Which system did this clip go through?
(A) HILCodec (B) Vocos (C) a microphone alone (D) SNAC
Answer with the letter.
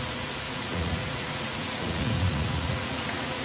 B